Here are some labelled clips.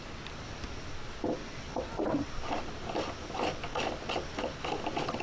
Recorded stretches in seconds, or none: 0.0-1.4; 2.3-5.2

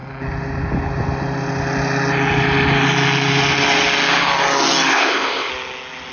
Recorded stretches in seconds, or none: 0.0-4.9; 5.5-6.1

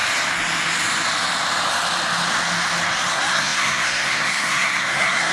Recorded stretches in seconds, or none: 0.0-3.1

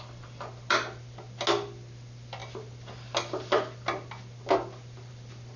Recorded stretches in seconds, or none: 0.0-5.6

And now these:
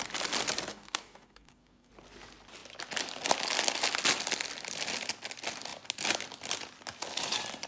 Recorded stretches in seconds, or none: 0.0-0.7; 1.9-7.7

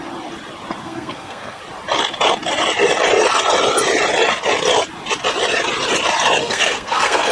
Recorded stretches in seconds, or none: 0.0-0.8; 1.6-6.4

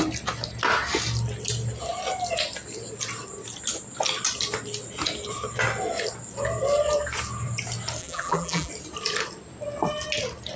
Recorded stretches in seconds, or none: 0.0-8.0; 8.7-10.6